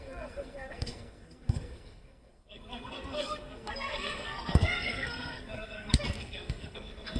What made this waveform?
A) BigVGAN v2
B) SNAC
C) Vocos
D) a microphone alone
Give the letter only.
B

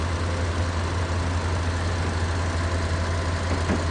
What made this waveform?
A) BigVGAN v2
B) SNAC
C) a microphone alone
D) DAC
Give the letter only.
C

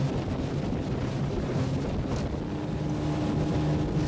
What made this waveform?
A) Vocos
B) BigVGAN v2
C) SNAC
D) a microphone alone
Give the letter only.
D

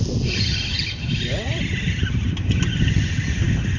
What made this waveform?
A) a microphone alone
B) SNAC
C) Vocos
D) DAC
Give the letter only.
A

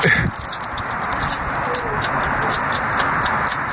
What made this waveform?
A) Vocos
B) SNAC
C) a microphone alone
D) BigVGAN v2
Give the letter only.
C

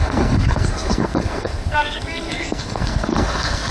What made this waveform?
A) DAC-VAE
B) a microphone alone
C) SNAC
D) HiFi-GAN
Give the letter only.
C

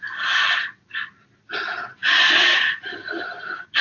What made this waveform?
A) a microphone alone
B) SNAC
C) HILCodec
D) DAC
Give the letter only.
A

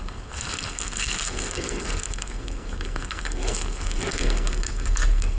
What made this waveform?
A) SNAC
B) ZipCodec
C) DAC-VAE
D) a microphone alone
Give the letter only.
A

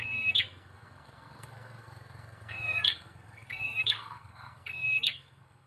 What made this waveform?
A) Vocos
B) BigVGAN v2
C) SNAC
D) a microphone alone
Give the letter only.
C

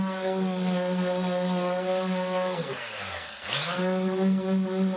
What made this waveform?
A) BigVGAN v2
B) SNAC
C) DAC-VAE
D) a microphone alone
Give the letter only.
B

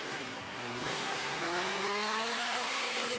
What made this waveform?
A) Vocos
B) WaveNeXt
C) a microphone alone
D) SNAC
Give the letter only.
D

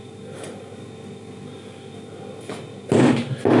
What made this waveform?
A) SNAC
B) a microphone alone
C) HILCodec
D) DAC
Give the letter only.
B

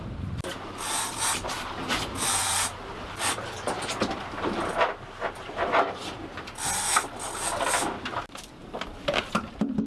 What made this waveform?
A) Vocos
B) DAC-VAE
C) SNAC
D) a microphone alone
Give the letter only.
D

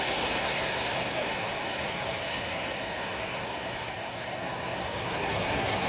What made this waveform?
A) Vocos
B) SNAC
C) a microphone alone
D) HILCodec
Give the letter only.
B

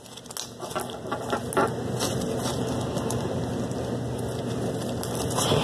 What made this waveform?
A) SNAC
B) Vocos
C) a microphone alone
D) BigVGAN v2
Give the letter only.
C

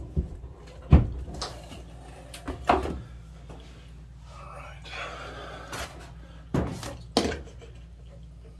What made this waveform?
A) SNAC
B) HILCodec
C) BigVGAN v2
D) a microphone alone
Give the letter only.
D